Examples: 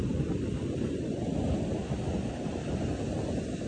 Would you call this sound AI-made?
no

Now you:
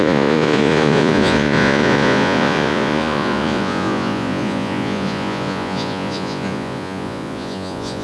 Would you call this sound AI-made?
yes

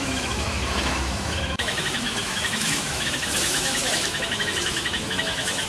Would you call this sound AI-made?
yes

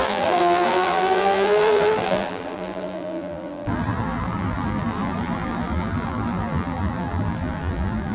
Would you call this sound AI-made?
yes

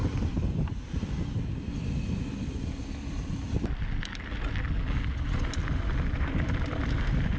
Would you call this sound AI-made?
no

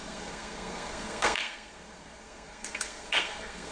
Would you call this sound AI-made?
yes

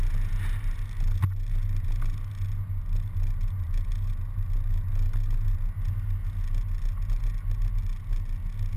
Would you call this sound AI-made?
no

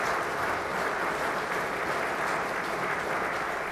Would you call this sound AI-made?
no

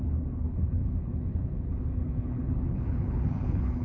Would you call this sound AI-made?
yes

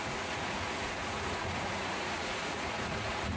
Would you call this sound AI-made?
yes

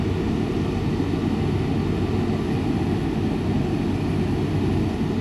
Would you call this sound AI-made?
no